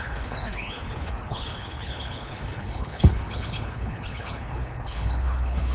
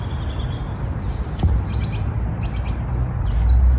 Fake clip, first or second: first